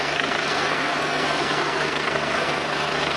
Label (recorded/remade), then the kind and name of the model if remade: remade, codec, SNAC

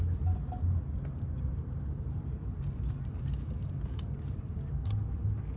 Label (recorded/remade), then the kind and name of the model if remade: recorded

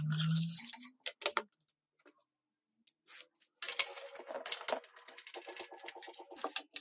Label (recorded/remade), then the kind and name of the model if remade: recorded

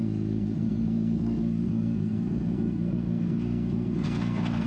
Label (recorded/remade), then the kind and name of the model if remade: remade, codec, SNAC